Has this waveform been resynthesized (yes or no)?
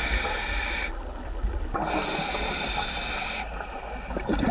no